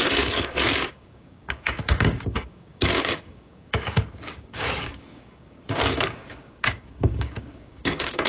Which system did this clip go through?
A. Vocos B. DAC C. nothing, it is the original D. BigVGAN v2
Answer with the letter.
B